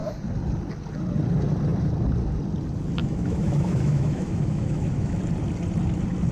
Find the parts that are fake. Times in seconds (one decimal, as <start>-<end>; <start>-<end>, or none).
3.0-5.2